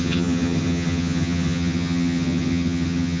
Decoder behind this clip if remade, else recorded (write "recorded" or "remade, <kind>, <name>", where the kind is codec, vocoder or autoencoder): remade, vocoder, HiFi-GAN